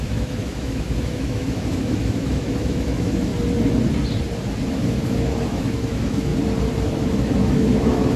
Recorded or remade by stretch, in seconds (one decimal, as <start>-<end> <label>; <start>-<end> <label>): 0.0-3.3 remade; 3.3-4.7 recorded; 4.7-6.3 remade; 6.3-6.8 recorded; 6.8-8.2 remade